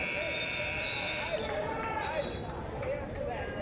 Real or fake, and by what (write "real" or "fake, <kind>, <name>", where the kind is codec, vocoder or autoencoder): fake, vocoder, BigVGAN v2